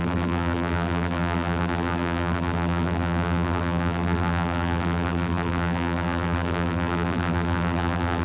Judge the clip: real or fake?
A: fake